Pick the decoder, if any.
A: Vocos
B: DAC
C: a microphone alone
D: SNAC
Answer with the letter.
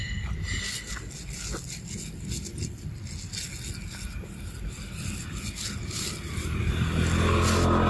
C